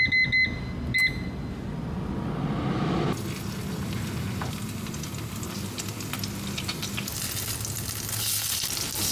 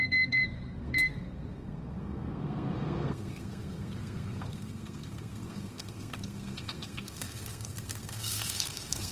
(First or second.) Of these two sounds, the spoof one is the second